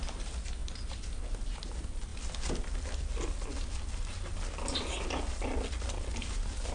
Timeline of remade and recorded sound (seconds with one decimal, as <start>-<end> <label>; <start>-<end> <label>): 0.0-6.7 recorded